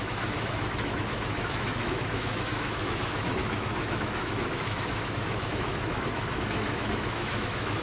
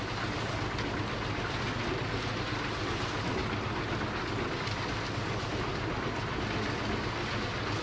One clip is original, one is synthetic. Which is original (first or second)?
second